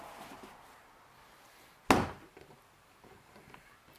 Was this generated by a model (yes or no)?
no